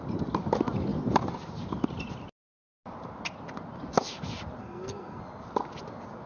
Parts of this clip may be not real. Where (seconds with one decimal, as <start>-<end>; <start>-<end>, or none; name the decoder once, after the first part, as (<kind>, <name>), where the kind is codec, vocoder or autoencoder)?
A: 4.6-5.2 (codec, SNAC)